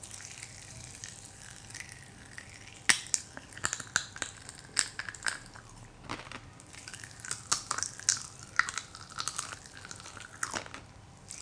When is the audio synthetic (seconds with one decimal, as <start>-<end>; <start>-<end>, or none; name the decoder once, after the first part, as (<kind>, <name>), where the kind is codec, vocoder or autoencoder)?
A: none